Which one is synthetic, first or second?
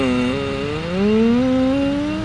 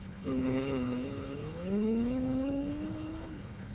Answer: second